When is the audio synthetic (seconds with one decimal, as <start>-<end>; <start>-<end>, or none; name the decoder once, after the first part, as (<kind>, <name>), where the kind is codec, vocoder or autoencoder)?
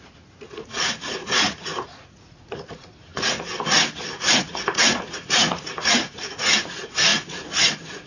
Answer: 0.0-8.1 (vocoder, Vocos)